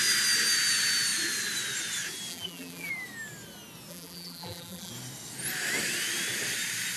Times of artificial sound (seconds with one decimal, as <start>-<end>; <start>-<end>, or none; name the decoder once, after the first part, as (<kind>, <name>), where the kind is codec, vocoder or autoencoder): 2.3-2.9 (vocoder, BigVGAN v2); 3.9-4.9